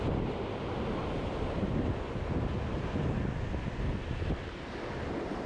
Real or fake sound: real